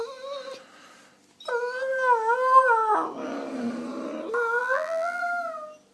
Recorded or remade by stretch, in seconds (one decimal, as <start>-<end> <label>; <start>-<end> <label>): 0.0-4.6 recorded; 4.6-5.2 remade; 5.2-5.9 recorded